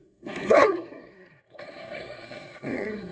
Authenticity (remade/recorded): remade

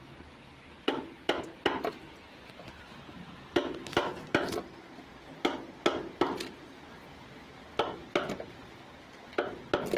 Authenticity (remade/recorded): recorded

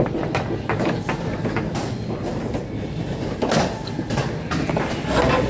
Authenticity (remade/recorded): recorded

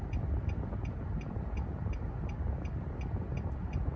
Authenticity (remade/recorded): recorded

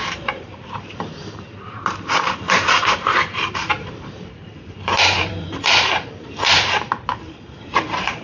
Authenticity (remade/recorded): remade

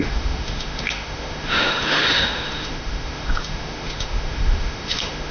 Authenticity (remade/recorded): remade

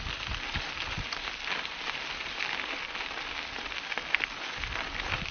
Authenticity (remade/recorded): recorded